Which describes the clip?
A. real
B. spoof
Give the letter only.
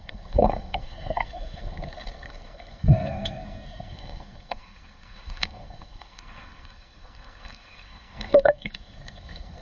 B